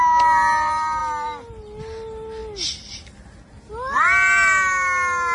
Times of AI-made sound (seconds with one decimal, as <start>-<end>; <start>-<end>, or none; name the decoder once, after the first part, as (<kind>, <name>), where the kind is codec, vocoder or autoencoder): none